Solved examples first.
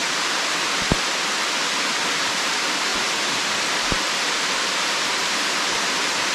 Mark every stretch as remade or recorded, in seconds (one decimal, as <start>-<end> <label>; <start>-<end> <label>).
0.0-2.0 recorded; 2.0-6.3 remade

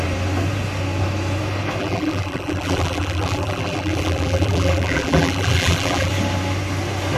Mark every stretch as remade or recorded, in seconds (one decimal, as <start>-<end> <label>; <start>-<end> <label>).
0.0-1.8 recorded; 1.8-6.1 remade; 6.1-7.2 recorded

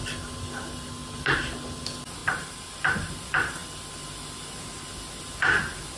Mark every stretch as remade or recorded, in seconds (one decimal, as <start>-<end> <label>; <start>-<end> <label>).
0.0-2.2 recorded; 2.2-3.1 remade; 3.1-6.0 recorded

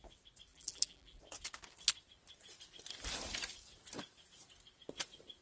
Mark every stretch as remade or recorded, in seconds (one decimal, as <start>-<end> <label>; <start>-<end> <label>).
0.0-0.5 recorded; 0.5-1.2 remade; 1.2-5.4 recorded

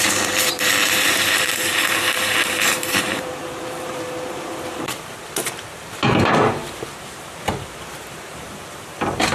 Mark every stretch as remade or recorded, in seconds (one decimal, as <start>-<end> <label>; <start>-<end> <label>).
0.0-6.6 remade; 6.6-7.7 recorded; 7.7-9.3 remade

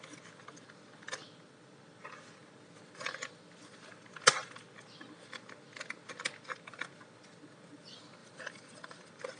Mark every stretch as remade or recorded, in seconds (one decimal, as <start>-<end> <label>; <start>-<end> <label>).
0.0-8.2 recorded; 8.2-9.4 remade

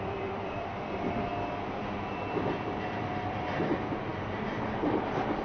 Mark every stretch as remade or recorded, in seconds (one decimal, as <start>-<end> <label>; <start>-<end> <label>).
0.0-1.3 remade; 1.3-2.8 recorded; 2.8-5.4 remade